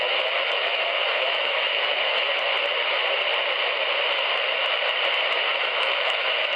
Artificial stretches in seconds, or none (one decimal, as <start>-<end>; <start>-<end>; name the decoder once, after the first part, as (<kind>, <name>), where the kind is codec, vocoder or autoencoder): 0.0-2.3 (autoencoder, DAC-VAE); 5.6-6.6